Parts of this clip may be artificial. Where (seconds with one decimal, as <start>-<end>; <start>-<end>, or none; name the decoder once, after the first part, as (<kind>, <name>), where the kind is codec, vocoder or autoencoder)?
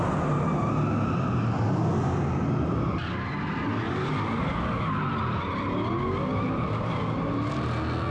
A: none